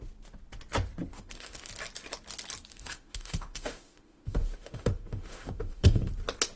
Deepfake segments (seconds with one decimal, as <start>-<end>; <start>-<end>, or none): 1.1-1.7; 2.7-6.1